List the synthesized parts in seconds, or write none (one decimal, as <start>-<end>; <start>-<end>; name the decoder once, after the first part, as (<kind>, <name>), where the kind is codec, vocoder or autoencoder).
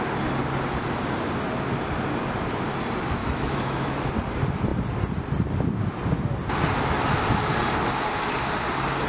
3.2-4.1 (autoencoder, DAC-VAE)